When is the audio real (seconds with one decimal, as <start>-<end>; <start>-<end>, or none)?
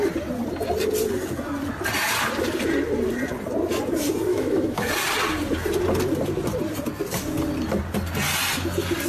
0.0-4.3; 4.9-9.1